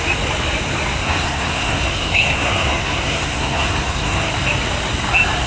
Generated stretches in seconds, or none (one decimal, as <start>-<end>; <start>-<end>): 1.0-4.3